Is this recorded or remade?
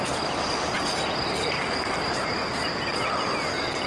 recorded